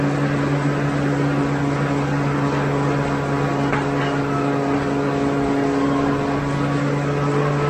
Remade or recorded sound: recorded